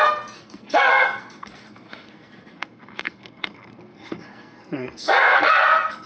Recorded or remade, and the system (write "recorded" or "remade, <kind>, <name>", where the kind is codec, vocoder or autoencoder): remade, codec, SNAC